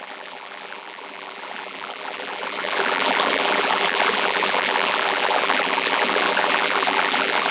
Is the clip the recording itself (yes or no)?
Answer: no